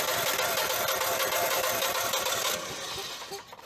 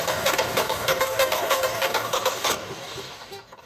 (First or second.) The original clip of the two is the first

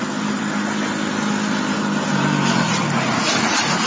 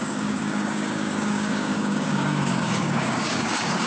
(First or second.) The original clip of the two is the first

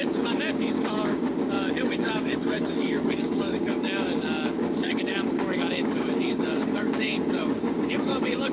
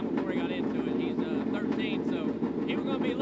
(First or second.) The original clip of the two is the second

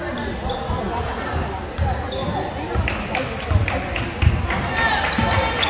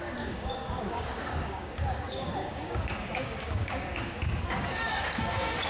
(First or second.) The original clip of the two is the first